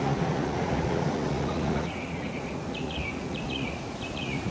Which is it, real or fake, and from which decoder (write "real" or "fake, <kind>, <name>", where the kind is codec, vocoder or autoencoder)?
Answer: fake, vocoder, Vocos